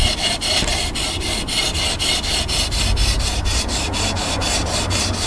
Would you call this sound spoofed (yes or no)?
no